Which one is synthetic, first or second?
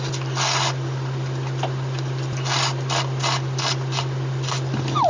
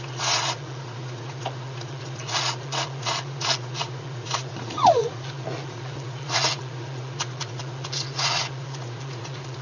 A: second